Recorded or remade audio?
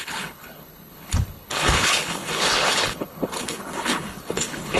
remade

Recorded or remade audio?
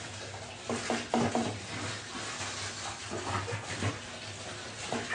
recorded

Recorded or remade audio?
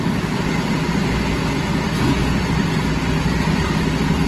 recorded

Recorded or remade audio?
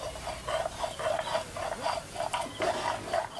recorded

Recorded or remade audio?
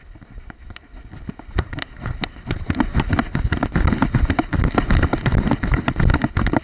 recorded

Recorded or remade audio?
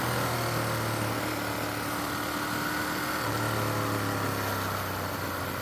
recorded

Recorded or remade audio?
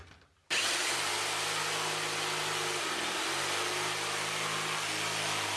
recorded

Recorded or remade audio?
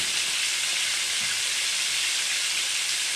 recorded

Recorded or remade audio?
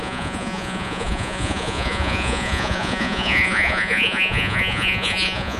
remade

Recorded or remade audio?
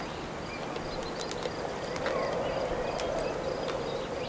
recorded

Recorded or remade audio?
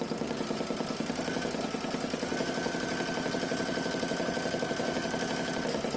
recorded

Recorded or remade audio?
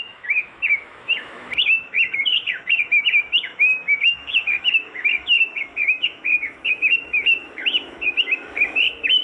remade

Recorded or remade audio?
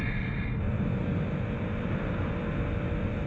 recorded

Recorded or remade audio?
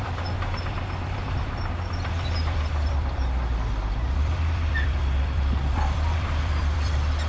remade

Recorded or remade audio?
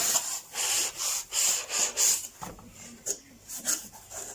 recorded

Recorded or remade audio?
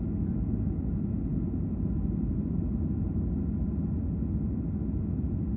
recorded